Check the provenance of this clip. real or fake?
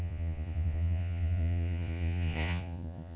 fake